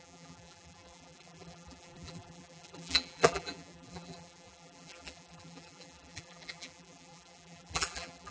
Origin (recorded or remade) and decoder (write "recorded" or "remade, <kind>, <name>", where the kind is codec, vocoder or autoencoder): remade, vocoder, BigVGAN v2